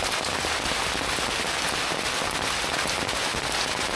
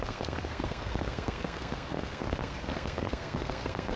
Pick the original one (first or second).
first